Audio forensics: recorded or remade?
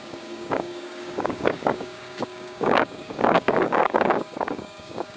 remade